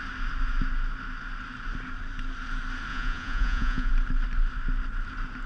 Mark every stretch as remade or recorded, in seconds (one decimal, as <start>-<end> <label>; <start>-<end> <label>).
0.0-2.9 recorded; 2.9-3.9 remade; 3.9-5.5 recorded